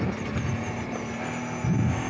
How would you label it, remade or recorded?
recorded